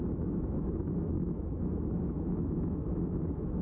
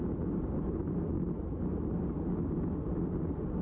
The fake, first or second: first